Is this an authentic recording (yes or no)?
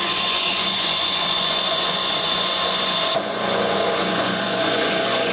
no